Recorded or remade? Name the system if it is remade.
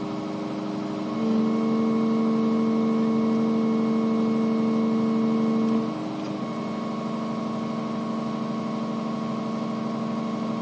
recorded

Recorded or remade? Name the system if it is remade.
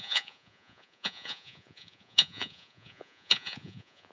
remade, vocoder, Vocos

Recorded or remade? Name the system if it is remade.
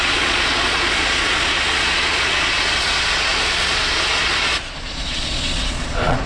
remade, vocoder, Vocos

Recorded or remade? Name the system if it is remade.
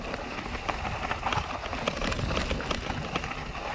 recorded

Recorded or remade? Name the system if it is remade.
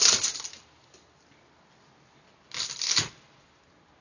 recorded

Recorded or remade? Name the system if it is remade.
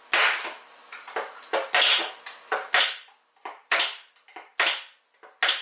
recorded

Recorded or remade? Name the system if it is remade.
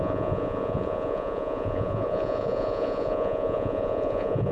remade, vocoder, Vocos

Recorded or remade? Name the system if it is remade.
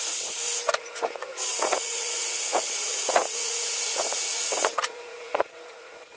remade, vocoder, Vocos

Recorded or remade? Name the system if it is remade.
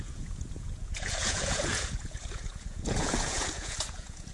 remade, vocoder, Vocos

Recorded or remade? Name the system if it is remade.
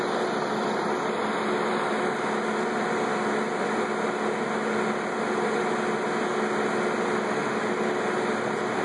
recorded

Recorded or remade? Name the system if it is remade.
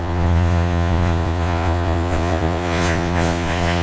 remade, vocoder, Vocos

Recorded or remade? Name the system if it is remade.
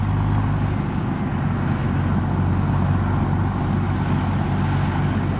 recorded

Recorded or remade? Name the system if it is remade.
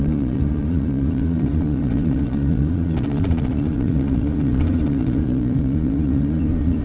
remade, vocoder, Vocos